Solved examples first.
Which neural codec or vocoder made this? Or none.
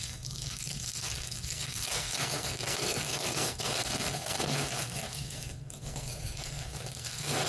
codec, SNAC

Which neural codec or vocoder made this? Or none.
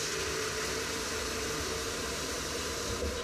none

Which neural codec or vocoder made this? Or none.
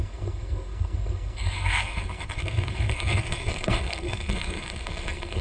codec, SNAC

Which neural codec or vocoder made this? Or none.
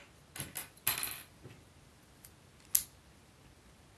none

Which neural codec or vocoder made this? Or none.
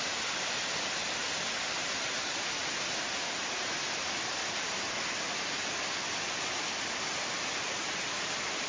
none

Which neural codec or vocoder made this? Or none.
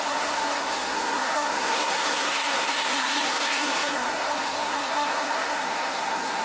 codec, SNAC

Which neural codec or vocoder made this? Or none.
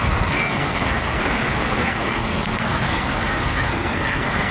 codec, SNAC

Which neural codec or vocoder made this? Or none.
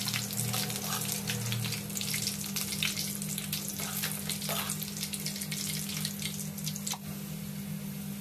none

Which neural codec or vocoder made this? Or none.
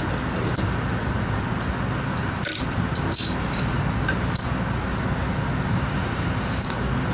none